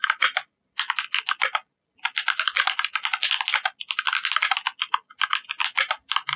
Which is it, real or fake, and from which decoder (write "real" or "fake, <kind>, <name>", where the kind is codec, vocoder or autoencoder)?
real